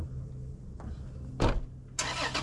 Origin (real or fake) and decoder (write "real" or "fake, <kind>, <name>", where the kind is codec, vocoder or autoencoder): real